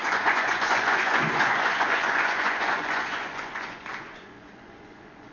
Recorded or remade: remade